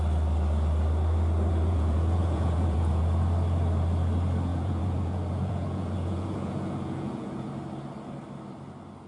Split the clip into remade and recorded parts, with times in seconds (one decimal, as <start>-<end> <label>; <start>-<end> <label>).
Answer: 0.0-1.5 recorded; 1.5-3.0 remade; 3.0-4.5 recorded; 4.5-7.5 remade; 7.5-9.1 recorded